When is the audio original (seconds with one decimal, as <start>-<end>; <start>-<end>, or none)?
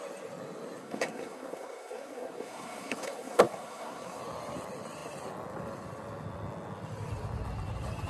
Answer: 0.0-0.8; 4.2-8.1